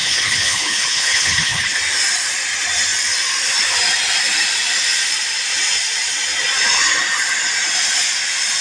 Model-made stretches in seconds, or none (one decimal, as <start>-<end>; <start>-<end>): 0.0-1.8

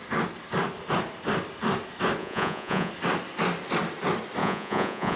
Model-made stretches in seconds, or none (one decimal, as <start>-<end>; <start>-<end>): 2.2-2.9; 4.4-5.2